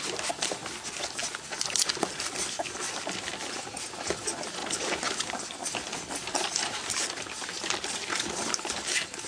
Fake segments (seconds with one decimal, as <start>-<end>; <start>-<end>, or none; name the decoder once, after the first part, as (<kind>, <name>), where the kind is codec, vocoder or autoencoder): none